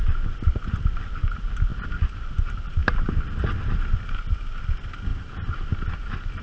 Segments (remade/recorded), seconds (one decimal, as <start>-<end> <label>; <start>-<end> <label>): 0.0-1.7 recorded; 1.7-2.2 remade; 2.2-5.1 recorded; 5.1-6.4 remade